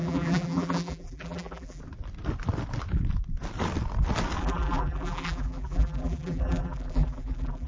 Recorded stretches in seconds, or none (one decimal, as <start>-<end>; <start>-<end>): 1.8-4.4